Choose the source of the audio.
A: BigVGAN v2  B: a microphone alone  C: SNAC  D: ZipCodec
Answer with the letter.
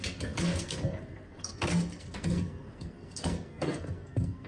C